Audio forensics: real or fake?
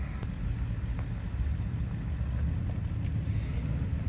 real